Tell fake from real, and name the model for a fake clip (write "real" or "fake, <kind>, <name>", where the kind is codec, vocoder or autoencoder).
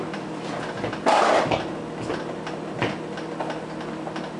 real